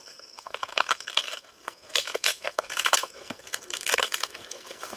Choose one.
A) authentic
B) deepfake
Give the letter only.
B